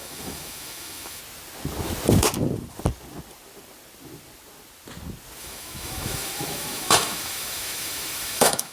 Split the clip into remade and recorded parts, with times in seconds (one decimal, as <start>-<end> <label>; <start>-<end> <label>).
0.0-1.2 remade; 1.2-5.4 recorded; 5.4-8.7 remade